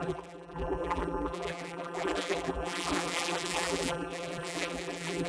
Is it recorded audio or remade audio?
remade